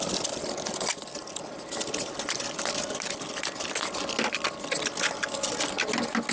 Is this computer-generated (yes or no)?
no